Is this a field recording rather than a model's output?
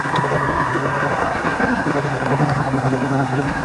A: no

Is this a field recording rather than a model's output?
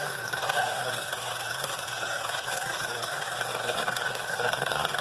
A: no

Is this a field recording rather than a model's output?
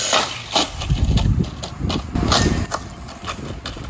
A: yes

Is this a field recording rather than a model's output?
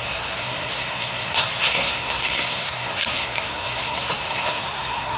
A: no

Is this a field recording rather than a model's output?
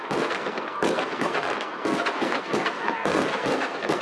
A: no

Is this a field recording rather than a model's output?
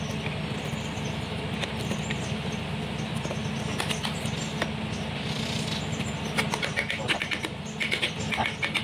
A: yes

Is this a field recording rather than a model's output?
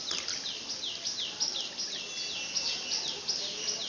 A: yes